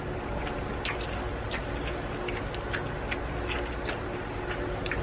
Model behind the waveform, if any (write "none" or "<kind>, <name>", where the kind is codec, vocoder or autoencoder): none